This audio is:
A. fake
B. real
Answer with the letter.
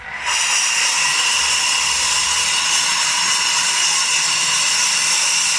B